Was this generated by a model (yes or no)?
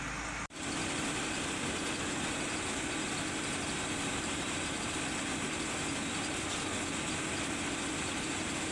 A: no